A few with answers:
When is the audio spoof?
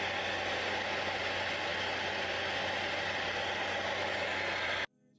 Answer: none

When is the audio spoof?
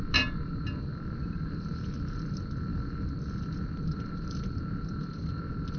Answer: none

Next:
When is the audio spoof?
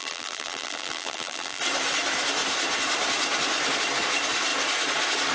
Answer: 0.0-1.6 (vocoder, BigVGAN v2)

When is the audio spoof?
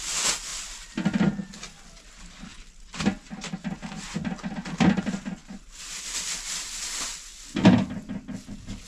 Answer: none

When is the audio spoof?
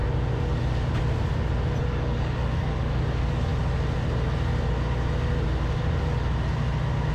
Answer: 1.8-3.5 (codec, DAC)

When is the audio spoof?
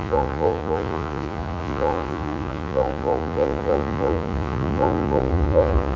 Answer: 0.0-6.0 (vocoder, Vocos)